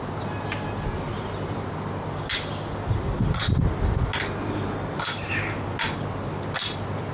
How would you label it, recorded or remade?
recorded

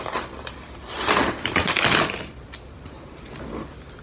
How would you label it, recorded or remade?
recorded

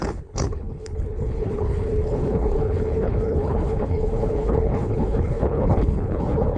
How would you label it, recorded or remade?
remade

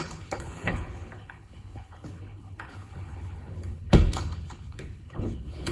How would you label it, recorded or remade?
remade